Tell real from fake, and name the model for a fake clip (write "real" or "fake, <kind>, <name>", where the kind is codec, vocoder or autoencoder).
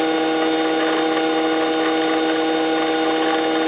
real